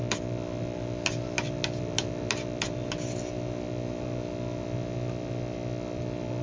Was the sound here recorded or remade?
recorded